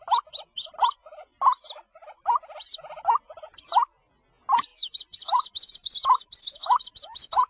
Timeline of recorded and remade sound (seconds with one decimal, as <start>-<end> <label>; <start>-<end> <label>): 0.0-7.5 recorded